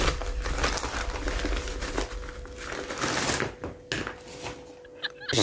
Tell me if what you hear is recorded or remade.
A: recorded